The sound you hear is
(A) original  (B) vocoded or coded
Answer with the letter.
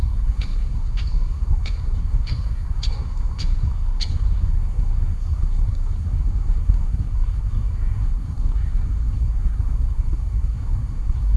B